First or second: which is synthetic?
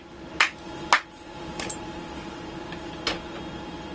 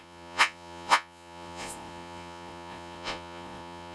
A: second